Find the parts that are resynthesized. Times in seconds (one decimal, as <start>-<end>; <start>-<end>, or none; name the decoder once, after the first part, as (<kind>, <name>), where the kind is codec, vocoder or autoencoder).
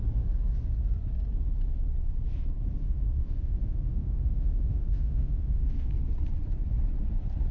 2.8-5.9 (autoencoder, DAC-VAE)